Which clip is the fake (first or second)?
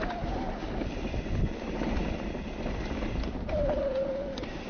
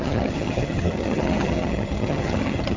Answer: second